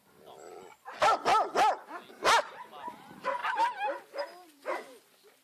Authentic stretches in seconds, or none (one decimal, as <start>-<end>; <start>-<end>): 0.0-5.4